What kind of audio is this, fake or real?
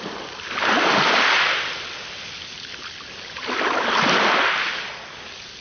real